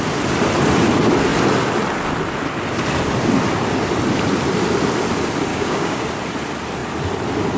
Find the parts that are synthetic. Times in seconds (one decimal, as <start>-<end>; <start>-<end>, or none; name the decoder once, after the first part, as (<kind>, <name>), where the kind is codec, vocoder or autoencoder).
5.5-6.0 (codec, DAC)